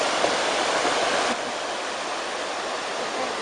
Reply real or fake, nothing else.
real